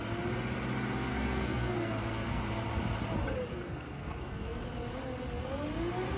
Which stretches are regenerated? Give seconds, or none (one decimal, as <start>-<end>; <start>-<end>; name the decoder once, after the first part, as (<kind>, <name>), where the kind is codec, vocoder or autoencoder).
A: 1.1-2.4 (codec, SNAC); 3.5-4.6